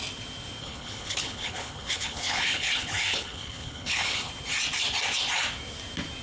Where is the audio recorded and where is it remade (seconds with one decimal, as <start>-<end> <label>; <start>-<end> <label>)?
0.0-0.6 recorded; 0.6-4.3 remade; 4.3-6.2 recorded